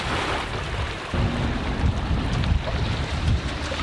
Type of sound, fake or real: real